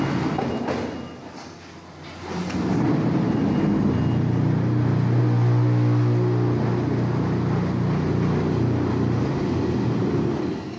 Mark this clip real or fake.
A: real